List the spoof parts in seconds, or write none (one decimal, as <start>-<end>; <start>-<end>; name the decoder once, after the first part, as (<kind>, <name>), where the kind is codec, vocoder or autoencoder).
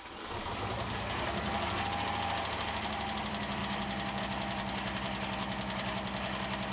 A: none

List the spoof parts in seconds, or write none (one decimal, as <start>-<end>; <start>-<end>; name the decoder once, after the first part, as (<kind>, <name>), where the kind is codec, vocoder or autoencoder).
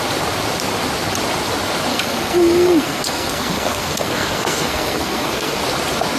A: 1.9-5.6 (codec, SNAC)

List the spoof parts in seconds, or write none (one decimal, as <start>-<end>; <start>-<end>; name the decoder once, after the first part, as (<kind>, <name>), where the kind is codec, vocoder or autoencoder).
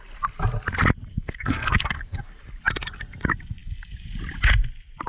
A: 1.1-2.4 (codec, SNAC)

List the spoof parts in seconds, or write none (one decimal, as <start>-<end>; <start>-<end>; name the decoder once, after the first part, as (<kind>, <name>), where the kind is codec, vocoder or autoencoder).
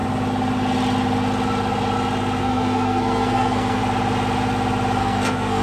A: 2.4-3.8 (codec, SNAC); 5.0-5.6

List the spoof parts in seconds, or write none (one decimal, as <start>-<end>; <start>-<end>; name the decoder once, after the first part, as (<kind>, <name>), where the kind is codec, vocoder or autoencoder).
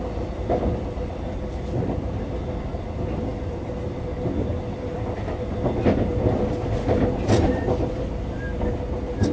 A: none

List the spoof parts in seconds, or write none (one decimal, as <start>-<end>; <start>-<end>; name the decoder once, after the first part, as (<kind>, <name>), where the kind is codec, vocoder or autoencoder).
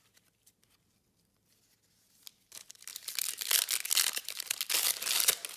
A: none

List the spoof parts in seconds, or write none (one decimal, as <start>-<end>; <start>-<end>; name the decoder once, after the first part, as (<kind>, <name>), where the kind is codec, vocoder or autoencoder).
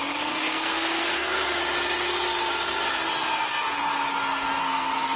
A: 0.0-1.6 (codec, SNAC); 4.6-5.2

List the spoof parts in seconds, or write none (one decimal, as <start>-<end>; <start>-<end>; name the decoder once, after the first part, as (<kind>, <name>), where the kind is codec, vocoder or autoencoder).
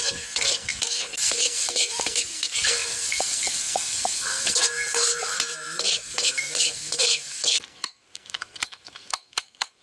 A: 0.0-9.8 (codec, SNAC)